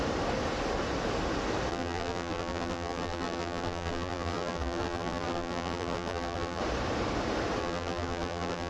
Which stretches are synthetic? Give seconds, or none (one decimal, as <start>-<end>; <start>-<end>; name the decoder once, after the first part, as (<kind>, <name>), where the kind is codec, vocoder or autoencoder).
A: 1.7-6.6 (vocoder, BigVGAN v2); 7.6-8.7